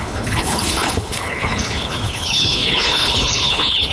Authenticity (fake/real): fake